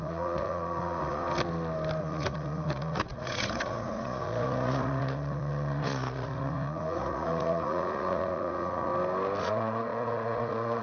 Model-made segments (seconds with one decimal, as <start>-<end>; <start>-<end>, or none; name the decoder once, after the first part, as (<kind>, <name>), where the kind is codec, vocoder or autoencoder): 0.0-1.2 (vocoder, Vocos); 2.0-8.9; 9.4-10.8